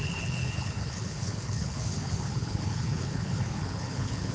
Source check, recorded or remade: remade